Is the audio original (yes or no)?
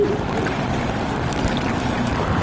no